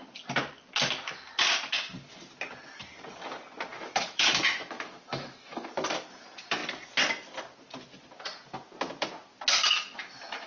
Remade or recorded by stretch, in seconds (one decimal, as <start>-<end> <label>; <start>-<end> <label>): 0.0-3.7 recorded; 3.7-5.7 remade; 5.7-9.6 recorded; 9.6-10.5 remade